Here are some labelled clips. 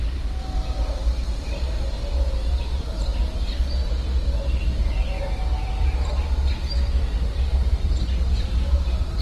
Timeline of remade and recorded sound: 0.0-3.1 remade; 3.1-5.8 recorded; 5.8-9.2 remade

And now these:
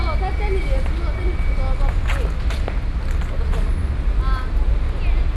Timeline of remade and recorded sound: 0.0-5.4 recorded

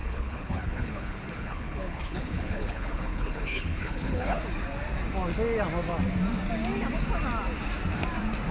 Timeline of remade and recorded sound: 0.0-4.4 remade; 4.4-8.5 recorded

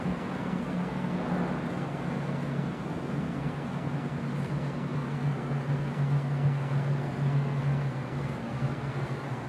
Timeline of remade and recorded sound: 0.0-1.2 remade; 1.2-1.7 recorded; 1.7-9.5 remade